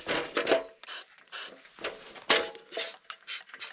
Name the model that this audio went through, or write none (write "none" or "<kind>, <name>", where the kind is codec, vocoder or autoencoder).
none